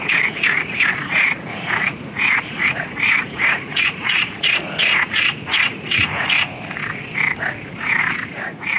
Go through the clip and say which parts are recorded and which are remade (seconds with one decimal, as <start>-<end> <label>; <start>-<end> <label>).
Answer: 0.0-6.7 remade; 6.7-8.1 recorded; 8.1-8.8 remade